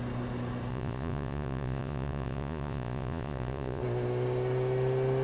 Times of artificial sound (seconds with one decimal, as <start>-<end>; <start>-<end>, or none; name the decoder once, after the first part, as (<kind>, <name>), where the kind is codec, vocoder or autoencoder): 0.7-3.8 (vocoder, Vocos)